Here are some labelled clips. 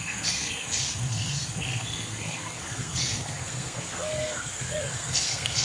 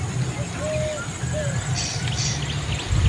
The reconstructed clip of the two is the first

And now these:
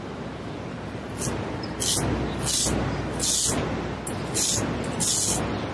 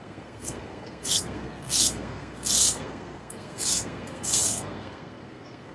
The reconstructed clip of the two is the second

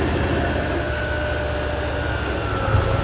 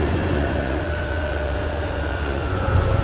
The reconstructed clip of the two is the second